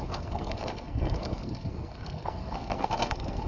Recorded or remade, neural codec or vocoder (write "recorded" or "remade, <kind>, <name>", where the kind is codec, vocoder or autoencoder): remade, codec, SNAC